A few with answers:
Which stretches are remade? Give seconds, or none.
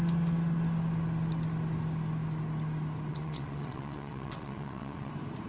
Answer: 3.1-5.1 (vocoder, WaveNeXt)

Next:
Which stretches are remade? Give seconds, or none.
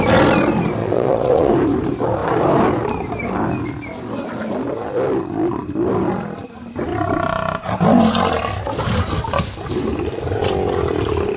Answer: 0.8-1.5 (vocoder, WaveNeXt)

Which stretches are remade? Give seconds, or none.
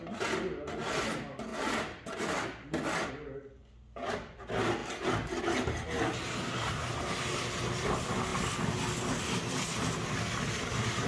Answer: none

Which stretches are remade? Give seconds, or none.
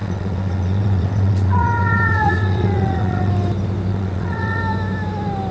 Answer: 0.0-3.3 (vocoder, WaveNeXt); 3.9-4.6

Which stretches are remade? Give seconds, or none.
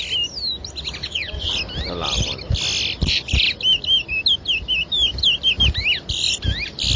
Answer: 1.0-1.5 (vocoder, WaveNeXt)